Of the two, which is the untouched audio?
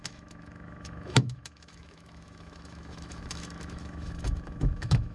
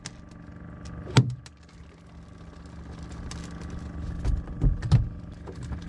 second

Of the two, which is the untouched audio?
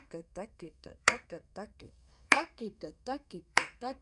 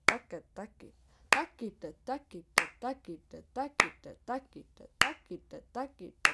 second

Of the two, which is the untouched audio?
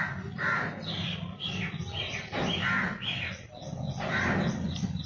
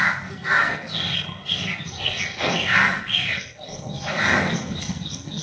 first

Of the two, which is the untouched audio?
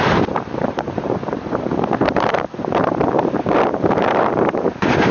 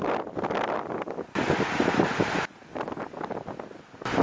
second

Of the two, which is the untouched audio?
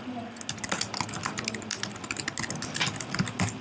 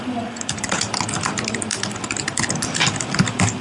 first